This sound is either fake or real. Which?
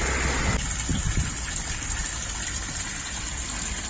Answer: real